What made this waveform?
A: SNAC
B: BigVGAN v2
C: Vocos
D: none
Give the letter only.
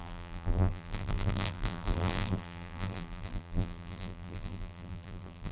B